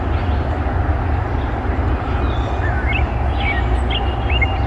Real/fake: real